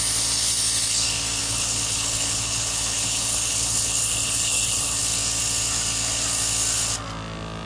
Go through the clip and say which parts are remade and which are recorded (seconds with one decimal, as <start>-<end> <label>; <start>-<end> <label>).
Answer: 0.0-1.4 recorded; 1.4-5.0 remade; 5.0-7.7 recorded

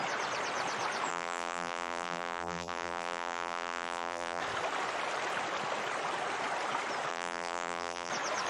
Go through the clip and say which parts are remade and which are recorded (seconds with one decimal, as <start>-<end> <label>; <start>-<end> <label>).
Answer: 0.0-1.1 recorded; 1.1-4.4 remade; 4.4-7.1 recorded; 7.1-8.1 remade; 8.1-8.5 recorded

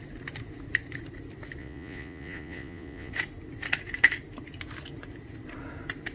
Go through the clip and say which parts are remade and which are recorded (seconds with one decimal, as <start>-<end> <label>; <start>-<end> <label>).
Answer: 0.0-1.6 recorded; 1.6-3.1 remade; 3.1-6.1 recorded

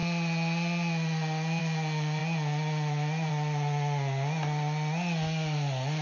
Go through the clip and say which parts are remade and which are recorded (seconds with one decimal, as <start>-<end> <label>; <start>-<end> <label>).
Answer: 0.0-6.0 recorded

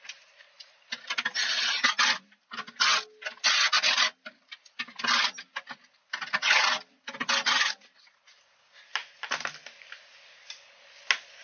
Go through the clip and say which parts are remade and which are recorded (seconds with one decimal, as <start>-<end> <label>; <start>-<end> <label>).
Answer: 0.0-11.4 recorded

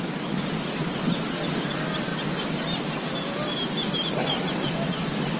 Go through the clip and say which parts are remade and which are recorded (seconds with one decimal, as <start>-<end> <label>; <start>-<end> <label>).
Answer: 0.0-5.4 recorded